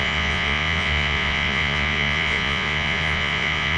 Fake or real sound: fake